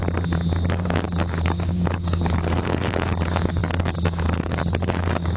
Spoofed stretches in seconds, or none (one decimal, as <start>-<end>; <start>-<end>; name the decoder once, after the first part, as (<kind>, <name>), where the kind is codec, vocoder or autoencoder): 0.7-5.4 (codec, DAC)